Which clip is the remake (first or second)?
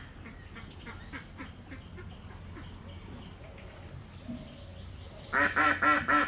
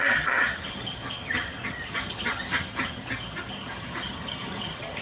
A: second